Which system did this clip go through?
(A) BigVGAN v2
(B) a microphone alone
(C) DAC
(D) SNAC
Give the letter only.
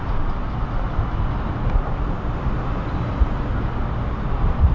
A